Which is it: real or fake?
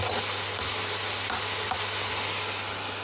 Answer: real